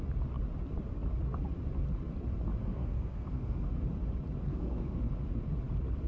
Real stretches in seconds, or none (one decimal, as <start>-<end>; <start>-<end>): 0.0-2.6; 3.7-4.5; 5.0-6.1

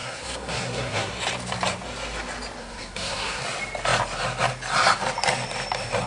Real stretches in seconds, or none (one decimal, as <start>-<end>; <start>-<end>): 1.1-2.6; 3.4-6.1

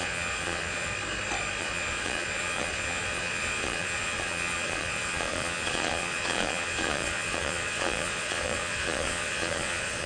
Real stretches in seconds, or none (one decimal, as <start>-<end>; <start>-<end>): 0.9-1.6

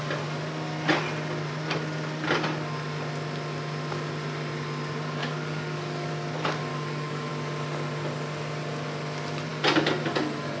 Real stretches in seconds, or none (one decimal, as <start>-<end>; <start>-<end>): 0.0-5.2; 6.1-6.7; 7.3-10.6

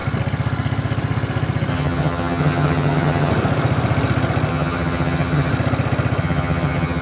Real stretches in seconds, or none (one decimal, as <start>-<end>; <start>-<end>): 0.0-1.7; 3.3-4.5; 5.5-6.2

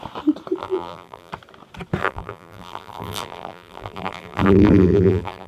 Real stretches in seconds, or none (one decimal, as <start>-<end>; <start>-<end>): 0.0-0.6; 1.3-2.0

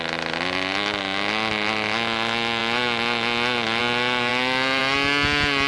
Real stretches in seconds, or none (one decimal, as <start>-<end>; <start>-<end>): 0.0-5.7

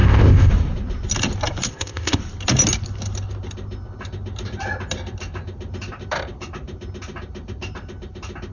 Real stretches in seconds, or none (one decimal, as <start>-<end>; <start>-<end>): 0.5-1.7; 2.2-8.5